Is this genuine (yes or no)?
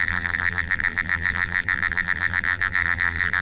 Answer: no